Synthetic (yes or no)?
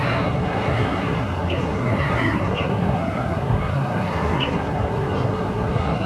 yes